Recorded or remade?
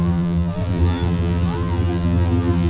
remade